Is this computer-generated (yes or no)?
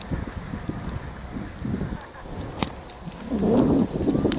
no